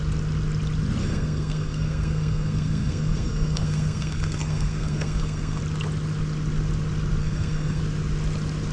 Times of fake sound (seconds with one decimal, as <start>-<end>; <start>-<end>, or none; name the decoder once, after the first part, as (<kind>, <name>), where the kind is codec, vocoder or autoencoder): 1.0-5.6 (codec, SNAC); 7.2-7.8